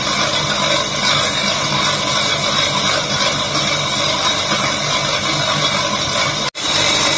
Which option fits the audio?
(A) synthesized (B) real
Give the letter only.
B